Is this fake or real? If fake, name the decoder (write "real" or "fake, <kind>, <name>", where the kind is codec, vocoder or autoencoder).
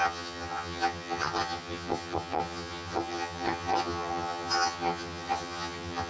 fake, vocoder, HiFi-GAN